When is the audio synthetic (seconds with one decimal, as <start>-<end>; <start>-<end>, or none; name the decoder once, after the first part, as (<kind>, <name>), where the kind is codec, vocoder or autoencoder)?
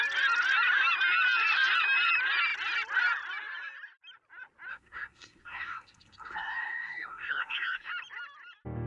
4.7-7.9 (codec, SNAC)